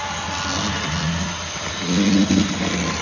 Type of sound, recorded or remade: recorded